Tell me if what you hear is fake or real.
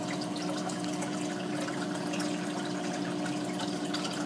real